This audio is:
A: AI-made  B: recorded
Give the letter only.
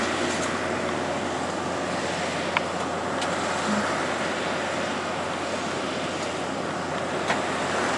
B